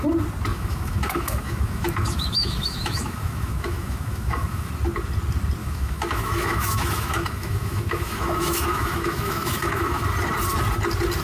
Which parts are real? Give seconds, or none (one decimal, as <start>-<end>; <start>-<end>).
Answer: 0.0-0.5; 4.7-5.6; 10.0-11.2